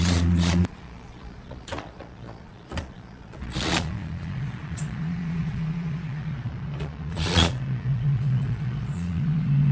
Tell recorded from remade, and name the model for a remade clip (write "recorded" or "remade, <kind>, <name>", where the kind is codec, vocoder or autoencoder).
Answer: remade, vocoder, Vocos